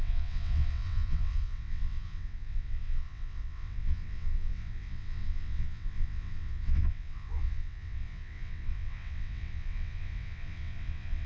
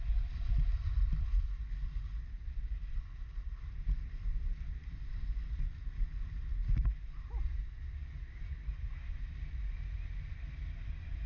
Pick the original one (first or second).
second